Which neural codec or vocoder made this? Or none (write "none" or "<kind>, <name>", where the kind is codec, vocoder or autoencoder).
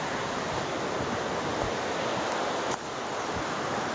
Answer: none